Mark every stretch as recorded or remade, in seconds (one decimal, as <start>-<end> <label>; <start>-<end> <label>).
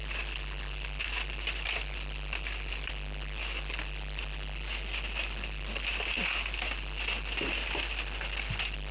0.0-8.9 recorded